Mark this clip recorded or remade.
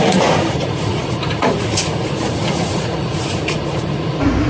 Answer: remade